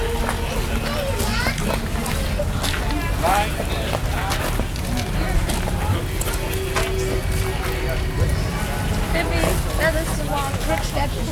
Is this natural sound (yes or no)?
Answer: yes